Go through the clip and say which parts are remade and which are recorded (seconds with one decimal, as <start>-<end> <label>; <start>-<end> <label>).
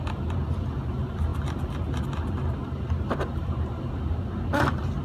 0.0-2.6 recorded; 2.6-4.0 remade; 4.0-5.0 recorded